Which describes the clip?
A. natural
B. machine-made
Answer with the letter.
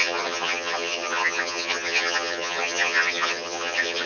B